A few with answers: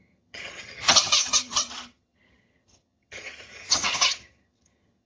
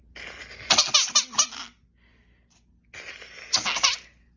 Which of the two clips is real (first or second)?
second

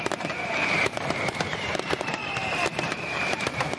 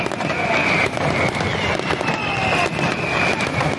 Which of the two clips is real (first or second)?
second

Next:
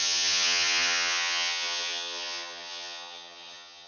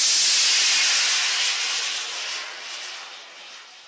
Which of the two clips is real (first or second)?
second